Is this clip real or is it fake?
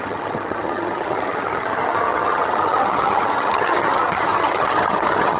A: fake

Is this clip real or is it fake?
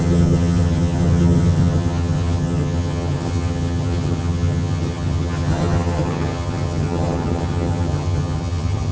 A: fake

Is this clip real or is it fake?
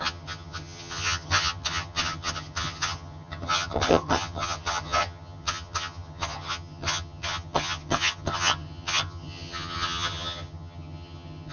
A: fake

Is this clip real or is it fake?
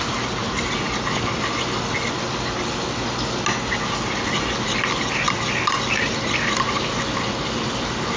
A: real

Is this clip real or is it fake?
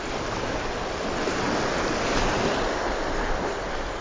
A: real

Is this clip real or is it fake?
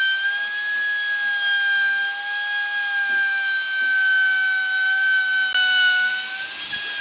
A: real